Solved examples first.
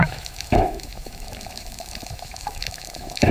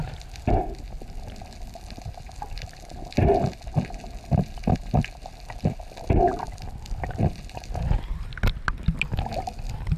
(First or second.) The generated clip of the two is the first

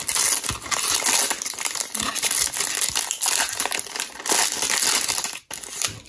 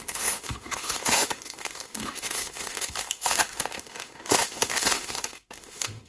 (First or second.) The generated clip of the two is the second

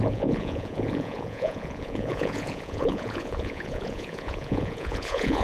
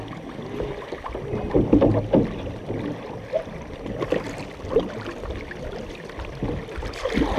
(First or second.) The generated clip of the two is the first